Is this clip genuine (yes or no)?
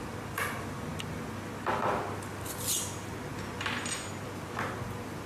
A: yes